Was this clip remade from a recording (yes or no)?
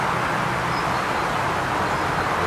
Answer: no